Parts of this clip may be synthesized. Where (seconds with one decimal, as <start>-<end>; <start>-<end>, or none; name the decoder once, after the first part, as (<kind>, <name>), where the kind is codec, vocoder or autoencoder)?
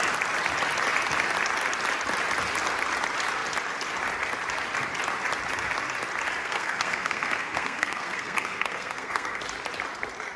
6.4-9.4 (codec, SNAC)